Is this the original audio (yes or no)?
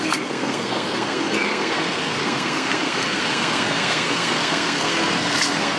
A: no